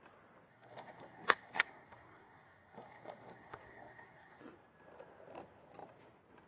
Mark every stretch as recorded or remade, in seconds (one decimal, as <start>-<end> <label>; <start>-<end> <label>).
0.0-0.5 recorded; 0.5-4.4 remade; 4.4-6.5 recorded